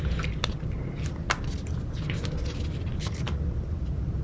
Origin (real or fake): real